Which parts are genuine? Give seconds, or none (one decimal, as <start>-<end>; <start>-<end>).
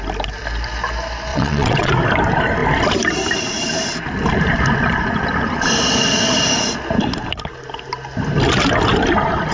0.0-1.3; 1.9-9.5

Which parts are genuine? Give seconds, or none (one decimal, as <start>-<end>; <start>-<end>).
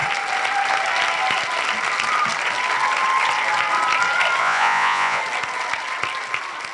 0.0-4.4; 5.2-6.7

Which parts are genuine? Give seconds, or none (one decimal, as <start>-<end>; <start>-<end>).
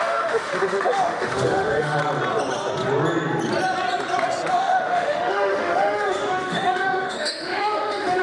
2.0-4.5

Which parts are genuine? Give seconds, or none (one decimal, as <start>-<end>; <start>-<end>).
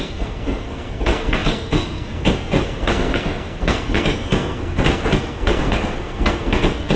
none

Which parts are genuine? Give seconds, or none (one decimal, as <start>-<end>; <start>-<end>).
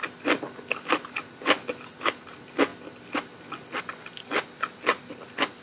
0.0-5.6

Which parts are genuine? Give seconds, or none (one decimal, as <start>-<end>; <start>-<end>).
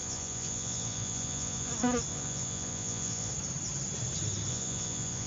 1.7-2.1; 3.3-4.5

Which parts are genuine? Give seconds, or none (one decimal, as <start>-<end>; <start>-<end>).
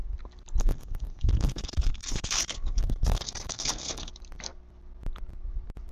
0.0-0.6; 4.1-5.9